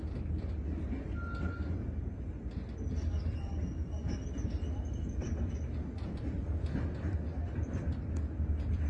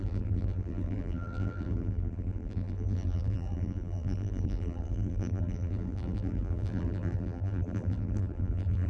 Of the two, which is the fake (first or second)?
second